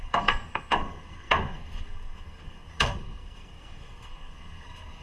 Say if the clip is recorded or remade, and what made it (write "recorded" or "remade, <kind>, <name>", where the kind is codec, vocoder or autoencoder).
remade, codec, SNAC